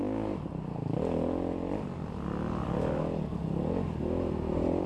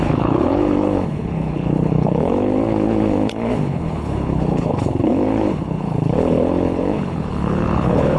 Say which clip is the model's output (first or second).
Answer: second